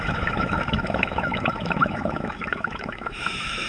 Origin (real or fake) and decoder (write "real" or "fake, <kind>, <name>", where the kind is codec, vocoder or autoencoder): fake, autoencoder, DAC-VAE